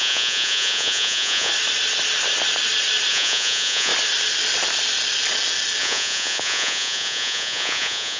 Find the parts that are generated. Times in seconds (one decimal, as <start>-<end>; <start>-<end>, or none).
0.0-1.5; 3.1-3.9; 5.8-8.2